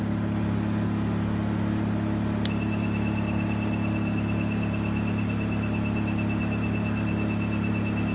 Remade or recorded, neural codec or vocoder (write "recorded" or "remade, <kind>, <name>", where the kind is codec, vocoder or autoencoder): recorded